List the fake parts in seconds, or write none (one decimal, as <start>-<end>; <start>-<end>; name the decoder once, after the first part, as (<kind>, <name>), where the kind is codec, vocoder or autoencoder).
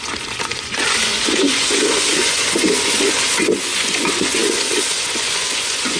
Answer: 0.0-6.0 (vocoder, Vocos)